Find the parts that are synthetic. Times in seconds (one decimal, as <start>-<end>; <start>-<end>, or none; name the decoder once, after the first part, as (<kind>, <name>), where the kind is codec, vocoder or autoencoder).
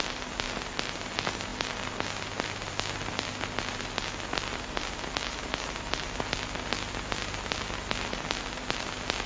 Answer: none